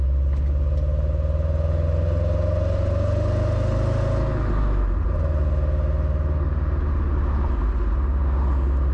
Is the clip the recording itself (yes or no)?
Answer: yes